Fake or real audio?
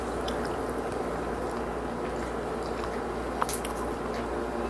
real